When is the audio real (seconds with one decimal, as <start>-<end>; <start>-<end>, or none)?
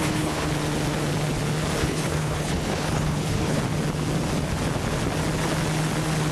0.5-1.8; 3.6-6.3